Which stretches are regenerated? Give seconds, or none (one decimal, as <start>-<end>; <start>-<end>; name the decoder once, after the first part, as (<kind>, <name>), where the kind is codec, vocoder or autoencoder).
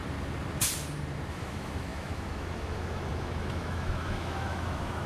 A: 1.3-5.1 (autoencoder, DAC-VAE)